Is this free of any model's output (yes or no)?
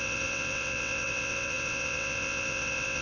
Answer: no